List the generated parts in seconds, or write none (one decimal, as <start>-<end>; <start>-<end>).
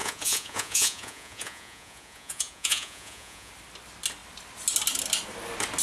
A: 0.0-3.5